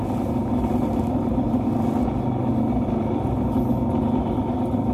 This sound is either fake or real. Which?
real